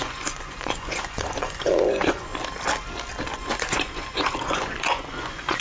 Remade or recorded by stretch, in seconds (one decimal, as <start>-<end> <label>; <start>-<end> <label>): 0.0-2.3 remade; 2.3-3.3 recorded; 3.3-5.6 remade